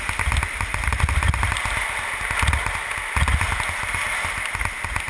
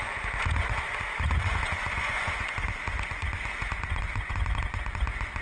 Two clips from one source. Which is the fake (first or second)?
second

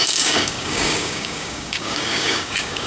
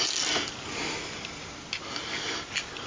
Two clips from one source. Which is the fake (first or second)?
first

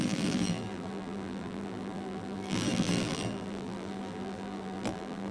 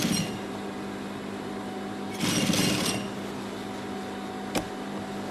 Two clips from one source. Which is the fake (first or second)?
first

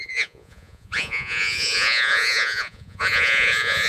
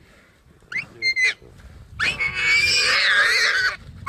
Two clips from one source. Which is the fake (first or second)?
first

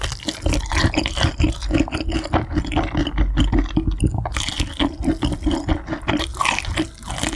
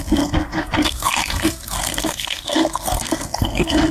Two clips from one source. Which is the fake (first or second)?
second